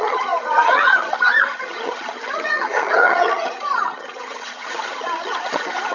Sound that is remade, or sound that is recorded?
remade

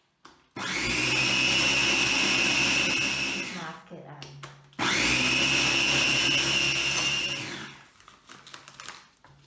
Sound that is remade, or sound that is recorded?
recorded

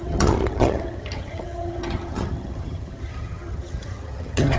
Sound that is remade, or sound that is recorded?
remade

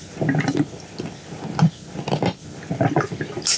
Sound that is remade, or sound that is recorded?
recorded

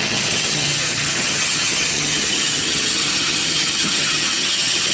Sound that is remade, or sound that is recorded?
remade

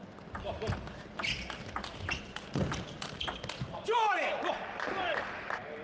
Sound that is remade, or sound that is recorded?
recorded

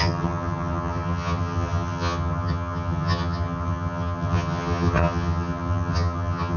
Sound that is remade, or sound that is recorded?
remade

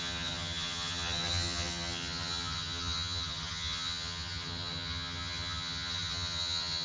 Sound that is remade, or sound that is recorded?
remade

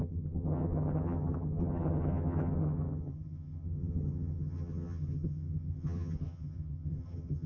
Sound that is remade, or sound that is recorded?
remade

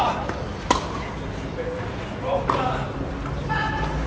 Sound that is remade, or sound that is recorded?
recorded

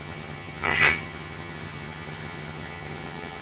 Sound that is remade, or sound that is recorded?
remade